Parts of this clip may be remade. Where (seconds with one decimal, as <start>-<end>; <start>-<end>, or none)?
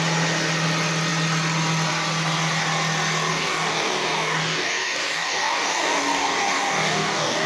3.3-7.5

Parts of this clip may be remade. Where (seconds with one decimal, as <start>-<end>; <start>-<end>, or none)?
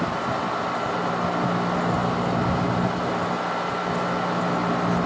none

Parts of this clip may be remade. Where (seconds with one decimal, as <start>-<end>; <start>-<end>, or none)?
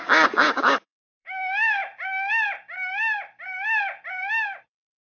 0.0-1.8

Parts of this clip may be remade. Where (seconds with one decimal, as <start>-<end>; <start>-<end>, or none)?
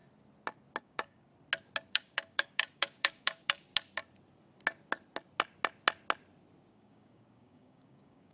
0.8-1.3; 1.9-3.7; 6.6-8.3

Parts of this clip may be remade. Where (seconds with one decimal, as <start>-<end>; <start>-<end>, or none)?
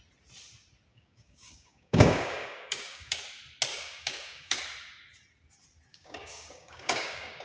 0.9-3.2; 3.7-4.6; 5.9-7.4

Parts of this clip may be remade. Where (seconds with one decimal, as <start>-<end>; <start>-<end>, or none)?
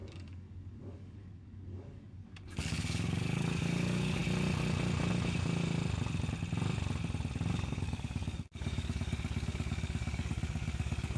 0.0-4.2; 7.5-11.2